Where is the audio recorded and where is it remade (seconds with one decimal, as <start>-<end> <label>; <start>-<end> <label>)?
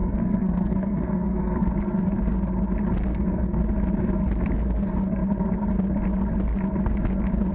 0.0-1.7 remade; 1.7-3.1 recorded; 3.1-3.6 remade; 3.6-7.5 recorded